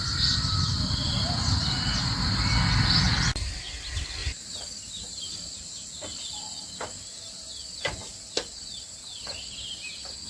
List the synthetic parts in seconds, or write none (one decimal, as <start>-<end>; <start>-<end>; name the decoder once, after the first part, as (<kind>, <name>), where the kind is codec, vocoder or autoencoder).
none